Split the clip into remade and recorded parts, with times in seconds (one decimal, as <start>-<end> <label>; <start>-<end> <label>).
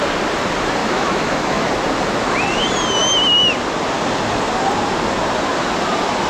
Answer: 0.0-0.8 recorded; 0.8-1.7 remade; 1.7-6.3 recorded